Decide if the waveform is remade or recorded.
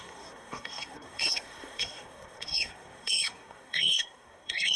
remade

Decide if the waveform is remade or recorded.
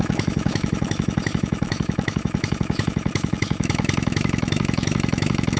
remade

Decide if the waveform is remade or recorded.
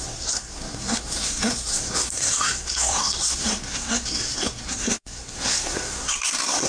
remade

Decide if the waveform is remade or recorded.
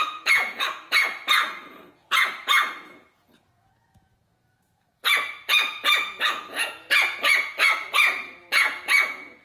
remade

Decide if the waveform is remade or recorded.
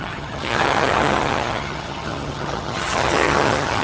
remade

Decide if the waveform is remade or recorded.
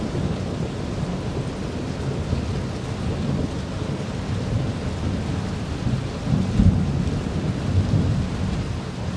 recorded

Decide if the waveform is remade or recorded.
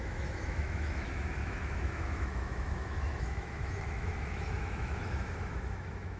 remade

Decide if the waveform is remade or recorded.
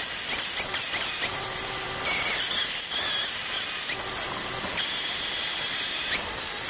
recorded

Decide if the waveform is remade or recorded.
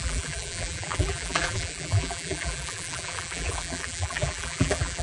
remade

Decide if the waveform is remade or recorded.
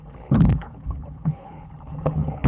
remade